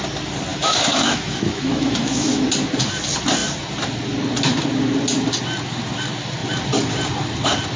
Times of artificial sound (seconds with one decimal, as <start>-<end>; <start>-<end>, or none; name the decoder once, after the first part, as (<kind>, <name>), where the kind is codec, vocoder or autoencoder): 0.5-2.4 (autoencoder, DAC-VAE)